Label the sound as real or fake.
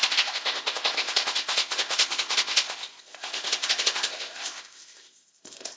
fake